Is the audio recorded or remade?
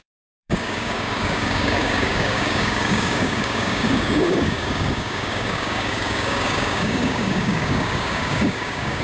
remade